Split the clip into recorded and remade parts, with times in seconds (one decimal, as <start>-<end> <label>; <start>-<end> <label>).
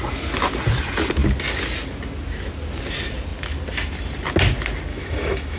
0.0-4.9 recorded; 4.9-5.6 remade